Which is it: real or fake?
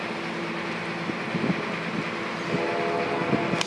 real